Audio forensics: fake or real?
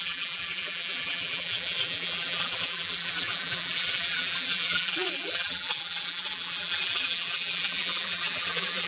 fake